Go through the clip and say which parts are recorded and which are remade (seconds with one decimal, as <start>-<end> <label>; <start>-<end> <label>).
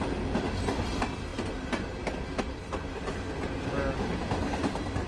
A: 0.0-5.1 recorded